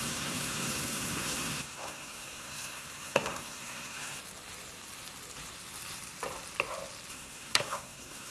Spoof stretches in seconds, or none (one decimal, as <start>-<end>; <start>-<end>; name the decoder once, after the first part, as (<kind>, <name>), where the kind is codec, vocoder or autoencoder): 0.0-4.2 (codec, SNAC); 7.1-8.3